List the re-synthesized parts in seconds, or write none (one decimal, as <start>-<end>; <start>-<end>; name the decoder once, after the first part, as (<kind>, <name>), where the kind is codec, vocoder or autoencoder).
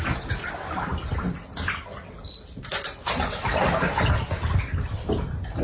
none